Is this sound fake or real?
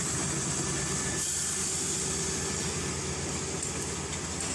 real